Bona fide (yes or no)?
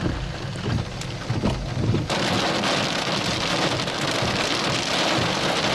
yes